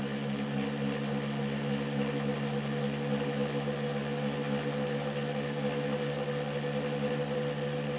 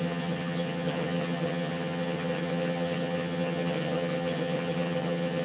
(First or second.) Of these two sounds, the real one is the first